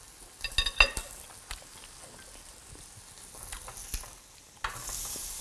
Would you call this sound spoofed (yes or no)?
no